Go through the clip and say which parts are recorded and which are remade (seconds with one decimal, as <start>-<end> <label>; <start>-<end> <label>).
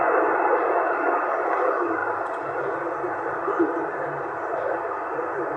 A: 0.0-5.6 recorded